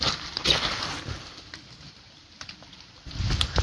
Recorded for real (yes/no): yes